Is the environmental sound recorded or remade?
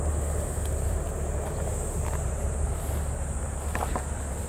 recorded